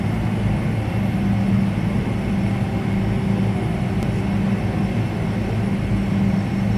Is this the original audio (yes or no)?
yes